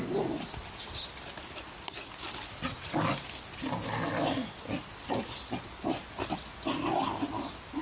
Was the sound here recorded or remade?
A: recorded